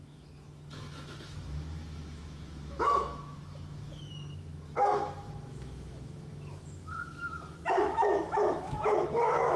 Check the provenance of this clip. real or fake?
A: fake